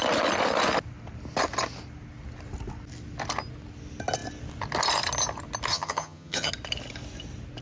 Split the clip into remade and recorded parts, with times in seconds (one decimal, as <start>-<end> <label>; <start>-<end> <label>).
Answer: 0.0-5.7 recorded; 5.7-6.5 remade; 6.5-7.6 recorded